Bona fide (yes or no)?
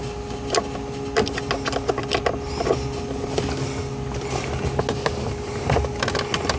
yes